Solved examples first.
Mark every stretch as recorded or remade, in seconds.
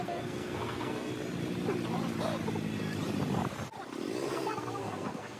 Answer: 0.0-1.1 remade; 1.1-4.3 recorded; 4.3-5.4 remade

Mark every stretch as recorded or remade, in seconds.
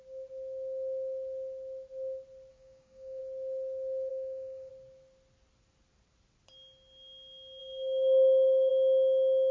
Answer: 0.0-2.5 recorded; 2.5-3.2 remade; 3.2-4.1 recorded; 4.1-4.7 remade; 4.7-7.6 recorded; 7.6-8.7 remade; 8.7-9.5 recorded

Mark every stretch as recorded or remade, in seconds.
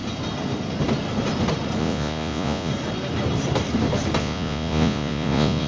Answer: 0.0-1.8 recorded; 1.8-2.7 remade; 2.7-4.2 recorded; 4.2-5.7 remade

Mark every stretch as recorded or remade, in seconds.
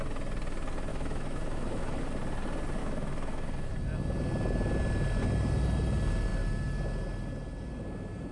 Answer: 0.0-0.9 recorded; 0.9-2.0 remade; 2.0-2.8 recorded; 2.8-3.7 remade; 3.7-8.3 recorded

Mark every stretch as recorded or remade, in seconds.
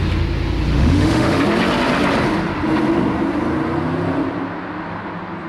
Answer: 0.0-0.7 recorded; 0.7-1.4 remade; 1.4-5.5 recorded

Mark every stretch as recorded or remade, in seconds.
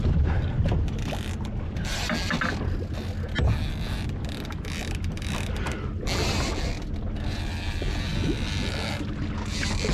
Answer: 0.0-9.9 recorded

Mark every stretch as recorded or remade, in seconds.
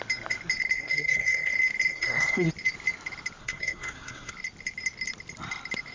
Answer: 0.0-0.8 recorded; 0.8-1.5 remade; 1.5-1.9 recorded; 1.9-2.5 remade; 2.5-3.4 recorded; 3.4-4.3 remade; 4.3-5.9 recorded